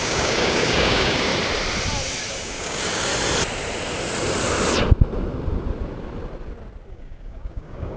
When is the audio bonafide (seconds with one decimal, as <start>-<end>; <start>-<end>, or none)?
1.3-2.3; 3.1-6.9